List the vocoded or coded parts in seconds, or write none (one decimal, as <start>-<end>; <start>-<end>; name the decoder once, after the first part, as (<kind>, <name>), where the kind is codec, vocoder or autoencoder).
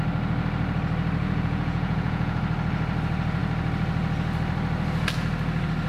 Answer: 1.2-2.4 (vocoder, Vocos)